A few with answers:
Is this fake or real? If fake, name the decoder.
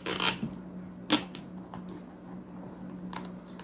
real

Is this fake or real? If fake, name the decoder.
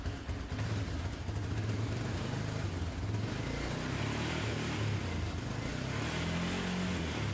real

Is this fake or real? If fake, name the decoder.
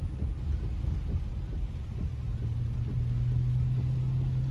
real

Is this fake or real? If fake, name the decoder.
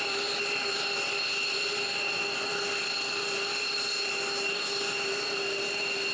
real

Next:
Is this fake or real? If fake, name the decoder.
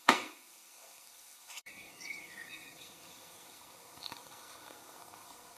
fake, codec, SNAC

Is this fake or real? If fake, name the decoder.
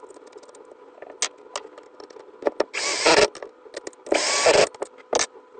real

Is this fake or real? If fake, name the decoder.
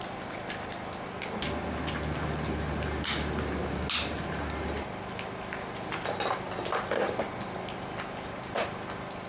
real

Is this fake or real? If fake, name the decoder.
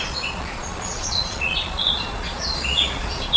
fake, vocoder, Vocos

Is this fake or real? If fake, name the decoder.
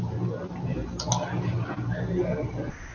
real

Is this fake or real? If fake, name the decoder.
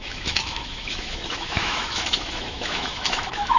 fake, autoencoder, DAC-VAE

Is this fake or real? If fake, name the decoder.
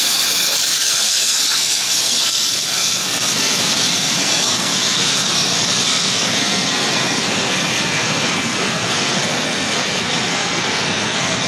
fake, codec, SNAC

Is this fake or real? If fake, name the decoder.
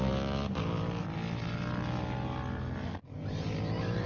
real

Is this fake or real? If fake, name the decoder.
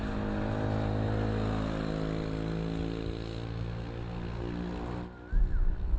real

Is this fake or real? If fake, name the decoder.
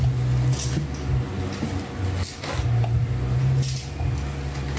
real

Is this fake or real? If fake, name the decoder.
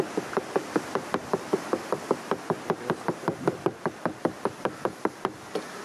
real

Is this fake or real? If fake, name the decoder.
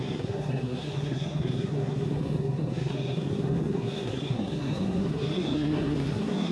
fake, codec, SNAC